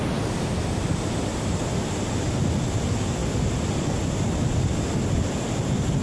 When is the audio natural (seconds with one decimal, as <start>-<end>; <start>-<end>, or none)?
0.0-6.0

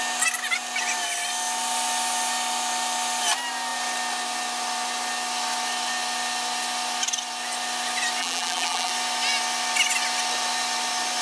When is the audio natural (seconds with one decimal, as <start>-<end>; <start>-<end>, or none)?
0.0-8.2; 8.9-11.2

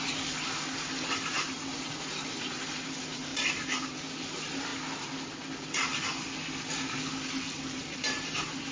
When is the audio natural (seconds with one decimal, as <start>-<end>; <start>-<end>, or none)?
4.7-7.3

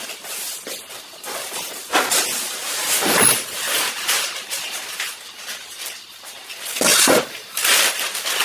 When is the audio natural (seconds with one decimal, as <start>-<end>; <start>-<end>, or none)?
0.0-2.6; 5.1-6.9; 7.9-8.4

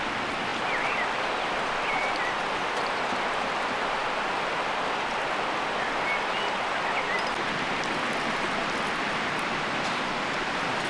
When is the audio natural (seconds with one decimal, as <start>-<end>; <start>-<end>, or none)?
0.0-10.9

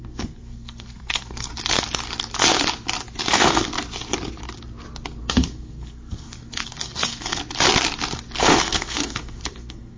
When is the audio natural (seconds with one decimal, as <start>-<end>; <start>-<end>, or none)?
1.5-3.3; 3.7-5.2; 7.4-8.4

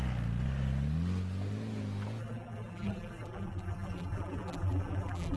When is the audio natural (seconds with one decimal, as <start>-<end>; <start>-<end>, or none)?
0.0-2.2